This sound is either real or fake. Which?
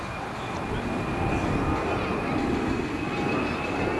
real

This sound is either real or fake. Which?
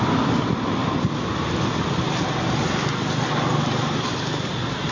real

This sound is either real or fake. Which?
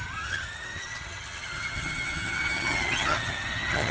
fake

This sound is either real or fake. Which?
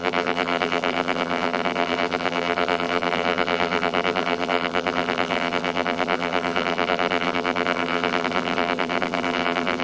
fake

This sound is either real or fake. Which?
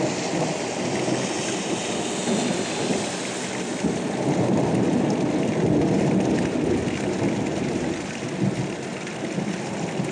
real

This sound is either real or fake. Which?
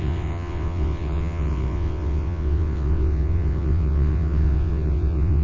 fake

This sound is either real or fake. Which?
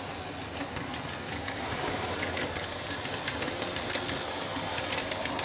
real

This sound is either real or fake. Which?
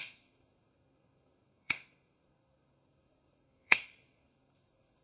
fake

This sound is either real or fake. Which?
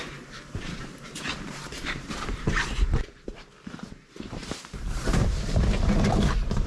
fake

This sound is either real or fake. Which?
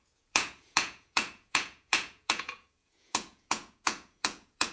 fake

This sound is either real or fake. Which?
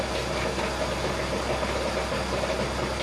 real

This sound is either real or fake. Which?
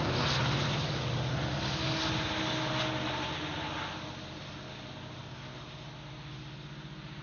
real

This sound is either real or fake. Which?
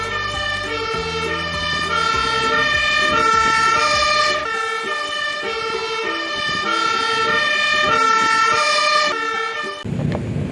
real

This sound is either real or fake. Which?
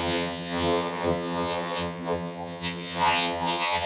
fake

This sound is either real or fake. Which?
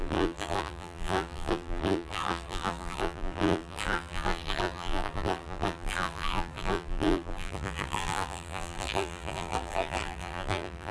fake